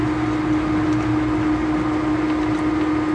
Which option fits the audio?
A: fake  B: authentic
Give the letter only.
B